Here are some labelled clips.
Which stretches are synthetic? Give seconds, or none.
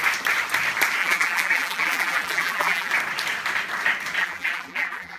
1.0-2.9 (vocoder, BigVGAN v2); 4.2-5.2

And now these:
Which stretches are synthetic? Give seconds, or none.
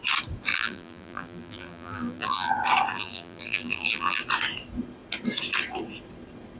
0.5-2.5 (vocoder, BigVGAN v2); 2.9-4.2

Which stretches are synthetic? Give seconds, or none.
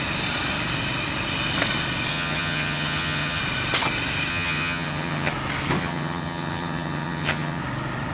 2.1-3.4 (vocoder, HiFi-GAN); 4.3-5.3; 5.8-7.6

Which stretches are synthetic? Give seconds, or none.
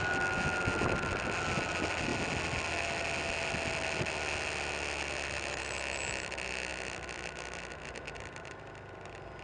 none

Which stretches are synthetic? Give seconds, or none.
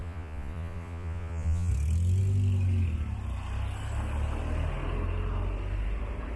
0.0-1.7 (vocoder, Vocos)